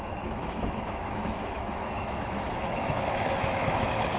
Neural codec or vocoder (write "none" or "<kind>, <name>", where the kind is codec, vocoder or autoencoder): autoencoder, DAC-VAE